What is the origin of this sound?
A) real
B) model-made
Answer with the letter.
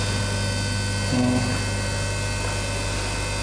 A